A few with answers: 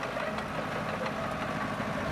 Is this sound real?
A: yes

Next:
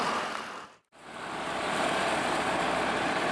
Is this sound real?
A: no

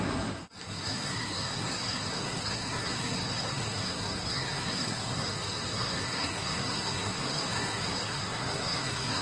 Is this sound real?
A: no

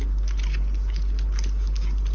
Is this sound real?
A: yes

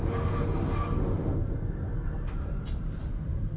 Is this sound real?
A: yes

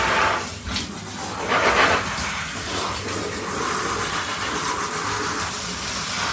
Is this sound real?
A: yes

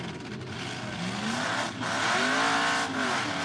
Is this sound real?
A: yes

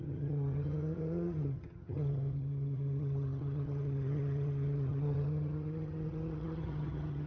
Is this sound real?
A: no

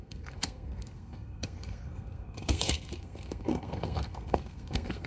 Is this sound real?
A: no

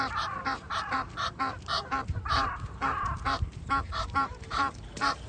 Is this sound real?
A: no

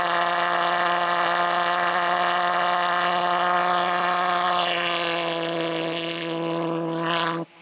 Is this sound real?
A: yes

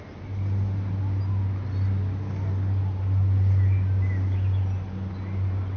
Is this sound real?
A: yes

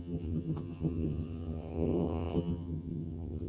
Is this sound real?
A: no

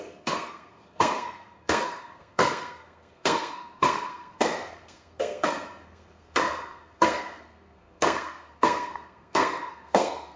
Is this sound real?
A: no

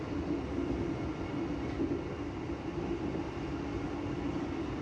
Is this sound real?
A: yes